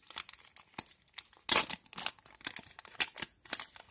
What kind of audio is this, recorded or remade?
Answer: recorded